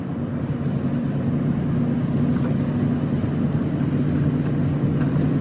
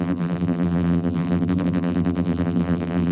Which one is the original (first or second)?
first